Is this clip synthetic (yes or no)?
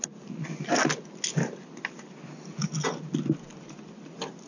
no